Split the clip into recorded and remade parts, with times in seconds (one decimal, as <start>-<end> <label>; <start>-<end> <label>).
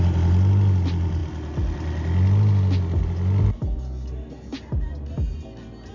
0.0-5.9 recorded